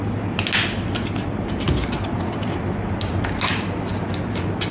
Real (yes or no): yes